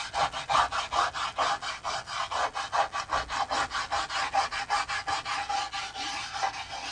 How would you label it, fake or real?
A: real